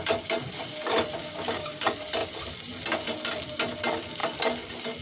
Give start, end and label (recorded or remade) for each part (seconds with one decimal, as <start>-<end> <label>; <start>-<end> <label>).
0.0-1.2 recorded; 1.2-1.8 remade; 1.8-5.0 recorded